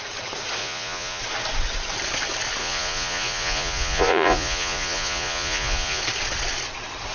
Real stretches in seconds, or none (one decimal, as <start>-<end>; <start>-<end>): 0.0-0.6; 1.2-2.6; 6.0-7.1